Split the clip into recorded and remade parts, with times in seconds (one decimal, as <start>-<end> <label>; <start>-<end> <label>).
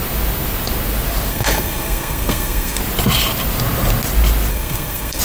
0.0-1.3 recorded; 1.3-2.8 remade; 2.8-4.5 recorded; 4.5-5.2 remade